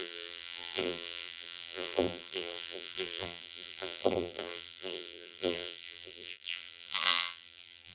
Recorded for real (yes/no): no